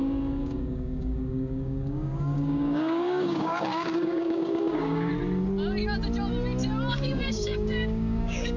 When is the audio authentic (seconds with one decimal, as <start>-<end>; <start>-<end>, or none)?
5.1-6.9